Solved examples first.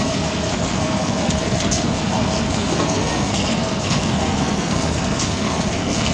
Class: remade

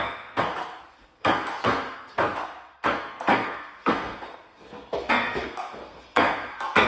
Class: remade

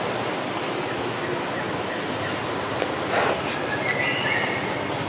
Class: recorded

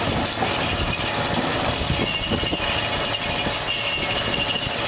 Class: recorded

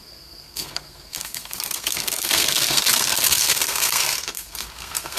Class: remade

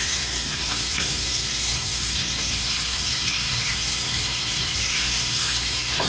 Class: remade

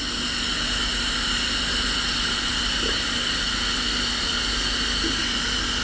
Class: recorded